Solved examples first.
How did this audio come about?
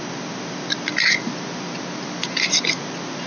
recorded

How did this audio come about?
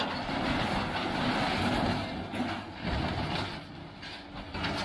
recorded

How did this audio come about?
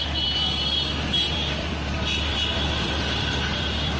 remade